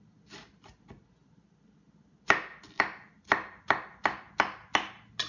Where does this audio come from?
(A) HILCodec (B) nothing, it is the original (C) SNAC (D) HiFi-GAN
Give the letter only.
B